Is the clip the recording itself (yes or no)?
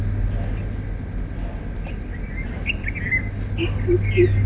yes